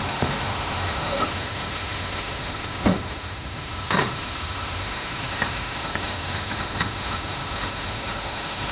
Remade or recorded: remade